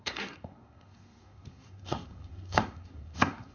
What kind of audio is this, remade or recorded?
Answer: remade